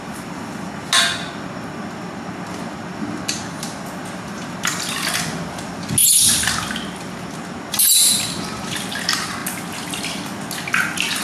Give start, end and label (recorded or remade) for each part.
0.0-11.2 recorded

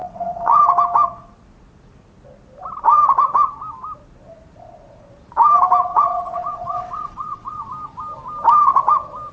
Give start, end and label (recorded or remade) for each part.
0.0-0.6 remade; 0.6-5.9 recorded; 5.9-7.7 remade; 7.7-9.3 recorded

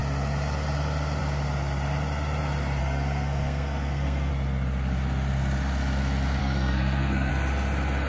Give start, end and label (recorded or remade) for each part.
0.0-2.8 recorded; 2.8-4.3 remade; 4.3-6.4 recorded; 6.4-7.3 remade; 7.3-8.1 recorded